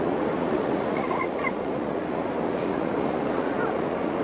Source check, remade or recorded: remade